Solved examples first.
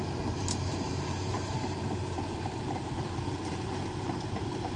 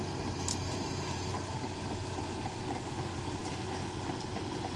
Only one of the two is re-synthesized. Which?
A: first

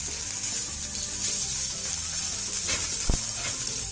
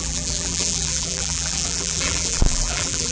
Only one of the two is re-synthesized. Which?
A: second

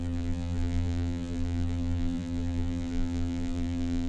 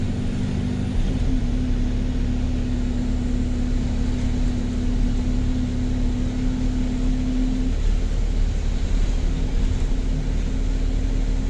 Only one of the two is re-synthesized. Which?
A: first